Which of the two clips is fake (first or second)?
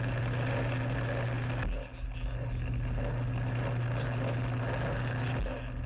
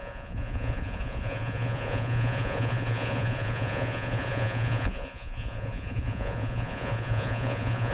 second